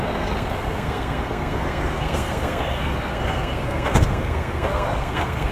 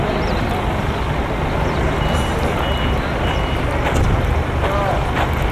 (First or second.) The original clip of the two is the second